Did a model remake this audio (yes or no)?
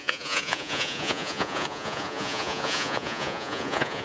yes